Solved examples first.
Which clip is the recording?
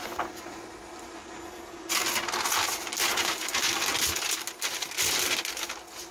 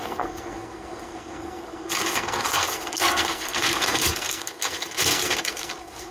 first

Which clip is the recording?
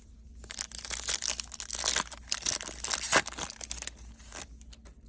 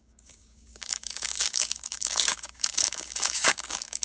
first